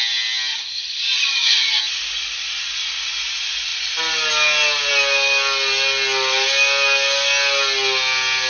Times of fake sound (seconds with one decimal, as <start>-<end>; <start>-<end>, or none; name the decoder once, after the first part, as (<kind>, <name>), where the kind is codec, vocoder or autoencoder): 0.5-1.8 (vocoder, Vocos)